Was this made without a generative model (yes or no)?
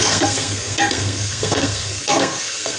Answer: no